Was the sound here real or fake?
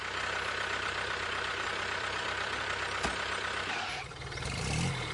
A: fake